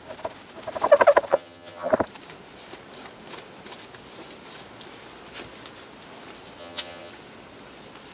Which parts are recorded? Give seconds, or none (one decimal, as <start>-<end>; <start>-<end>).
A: 0.0-1.3; 1.9-6.6; 7.1-8.1